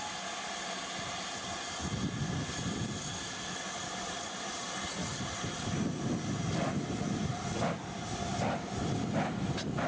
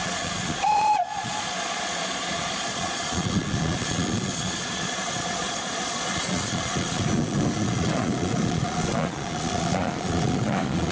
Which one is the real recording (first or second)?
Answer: first